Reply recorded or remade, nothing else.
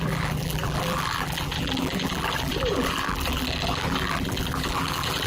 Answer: remade